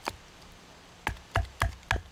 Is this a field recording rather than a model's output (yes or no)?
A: yes